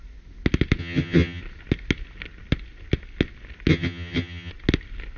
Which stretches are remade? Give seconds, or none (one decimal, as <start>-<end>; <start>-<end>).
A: 0.8-1.4; 3.7-4.5